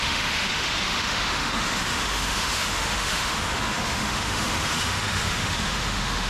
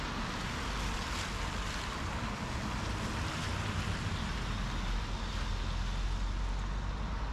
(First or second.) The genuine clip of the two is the second